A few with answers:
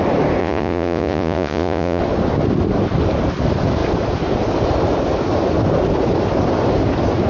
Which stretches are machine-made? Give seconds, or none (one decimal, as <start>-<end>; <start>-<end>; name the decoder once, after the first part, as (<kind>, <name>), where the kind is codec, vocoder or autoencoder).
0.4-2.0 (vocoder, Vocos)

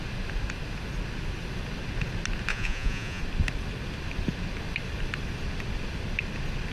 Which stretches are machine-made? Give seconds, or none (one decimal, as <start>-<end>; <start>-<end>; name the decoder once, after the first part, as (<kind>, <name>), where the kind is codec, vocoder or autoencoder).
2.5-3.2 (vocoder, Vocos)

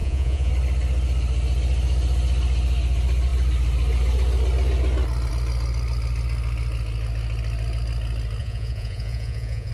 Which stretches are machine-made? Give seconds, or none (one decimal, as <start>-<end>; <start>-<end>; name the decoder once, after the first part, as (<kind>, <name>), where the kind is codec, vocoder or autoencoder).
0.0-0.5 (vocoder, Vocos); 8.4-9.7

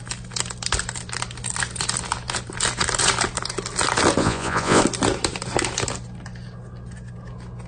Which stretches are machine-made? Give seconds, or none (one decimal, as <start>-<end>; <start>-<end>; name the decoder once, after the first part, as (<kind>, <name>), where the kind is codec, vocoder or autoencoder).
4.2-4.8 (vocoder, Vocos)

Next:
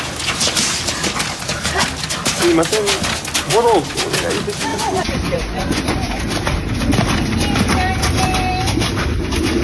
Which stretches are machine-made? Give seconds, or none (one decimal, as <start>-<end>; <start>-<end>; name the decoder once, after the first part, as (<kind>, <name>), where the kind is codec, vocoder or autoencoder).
4.7-6.2 (vocoder, Vocos)

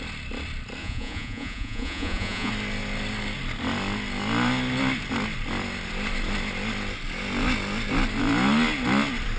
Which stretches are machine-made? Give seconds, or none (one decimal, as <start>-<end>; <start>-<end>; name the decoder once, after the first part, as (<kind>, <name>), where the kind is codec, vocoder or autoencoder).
0.8-2.5 (vocoder, Vocos)